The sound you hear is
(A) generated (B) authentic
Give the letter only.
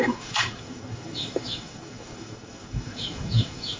A